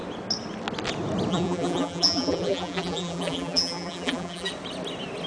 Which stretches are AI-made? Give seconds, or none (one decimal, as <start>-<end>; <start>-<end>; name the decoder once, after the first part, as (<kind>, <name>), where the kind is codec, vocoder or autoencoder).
1.3-4.5 (vocoder, BigVGAN v2)